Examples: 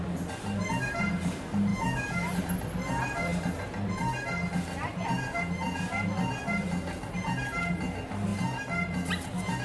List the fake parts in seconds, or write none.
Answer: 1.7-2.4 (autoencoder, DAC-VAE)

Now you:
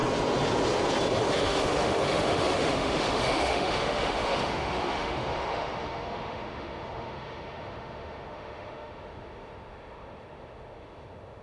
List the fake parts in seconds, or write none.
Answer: 1.3-11.4 (autoencoder, DAC-VAE)

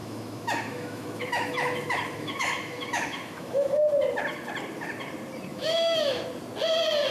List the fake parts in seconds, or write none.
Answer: 0.0-3.8 (autoencoder, DAC-VAE); 5.5-6.2